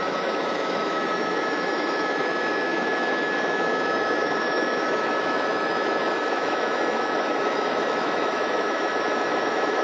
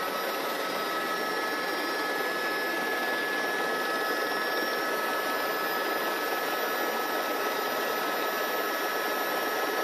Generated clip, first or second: first